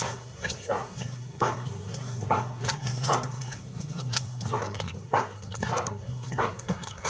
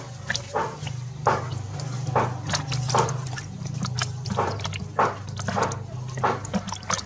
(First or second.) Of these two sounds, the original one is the second